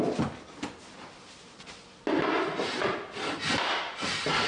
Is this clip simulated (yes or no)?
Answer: no